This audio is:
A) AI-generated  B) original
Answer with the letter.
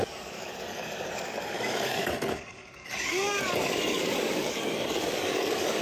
A